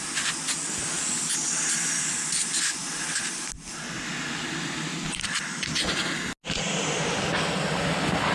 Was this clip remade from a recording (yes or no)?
no